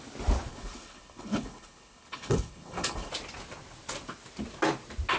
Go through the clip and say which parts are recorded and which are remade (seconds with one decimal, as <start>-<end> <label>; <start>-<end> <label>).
0.0-0.5 recorded; 0.5-3.1 remade; 3.1-5.2 recorded